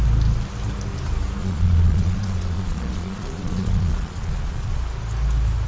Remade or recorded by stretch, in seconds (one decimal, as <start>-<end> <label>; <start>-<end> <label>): 0.0-1.4 recorded; 1.4-4.8 remade; 4.8-5.7 recorded